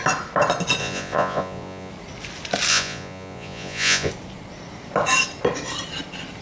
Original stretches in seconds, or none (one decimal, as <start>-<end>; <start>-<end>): 0.0-0.8; 1.9-2.7; 4.1-6.4